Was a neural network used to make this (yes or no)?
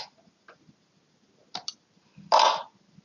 no